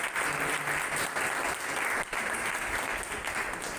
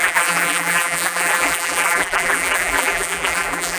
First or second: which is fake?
second